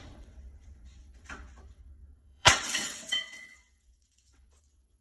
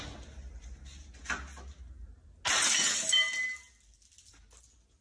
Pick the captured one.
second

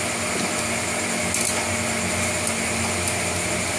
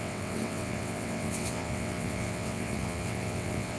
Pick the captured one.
first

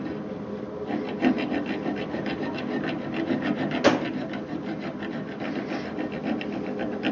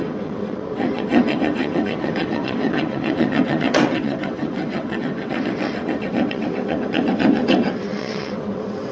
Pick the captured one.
first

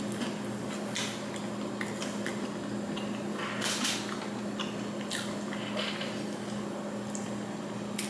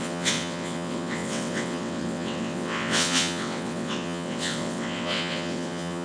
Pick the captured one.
first